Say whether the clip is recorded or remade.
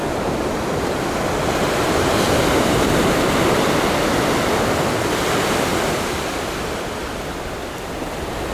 recorded